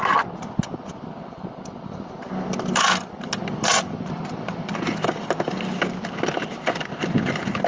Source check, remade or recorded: recorded